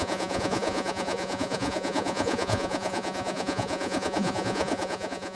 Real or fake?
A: fake